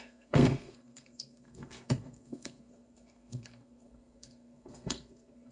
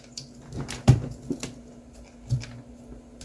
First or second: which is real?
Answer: second